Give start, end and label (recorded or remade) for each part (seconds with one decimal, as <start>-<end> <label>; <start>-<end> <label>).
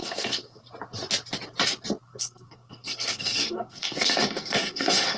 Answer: 0.0-0.6 remade; 0.6-2.1 recorded; 2.1-5.2 remade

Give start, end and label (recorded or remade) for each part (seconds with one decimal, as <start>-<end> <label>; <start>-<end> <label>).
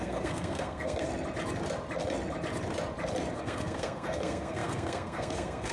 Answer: 0.0-1.1 remade; 1.1-3.3 recorded; 3.3-5.7 remade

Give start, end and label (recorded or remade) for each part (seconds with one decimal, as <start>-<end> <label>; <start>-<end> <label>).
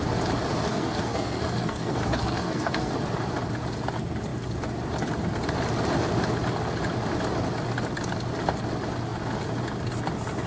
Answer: 0.0-0.7 recorded; 0.7-2.9 remade; 2.9-10.5 recorded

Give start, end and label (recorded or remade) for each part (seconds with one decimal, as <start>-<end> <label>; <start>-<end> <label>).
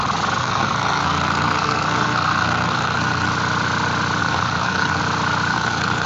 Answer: 0.0-0.4 recorded; 0.4-3.3 remade; 3.3-4.2 recorded; 4.2-5.0 remade; 5.0-5.5 recorded; 5.5-6.1 remade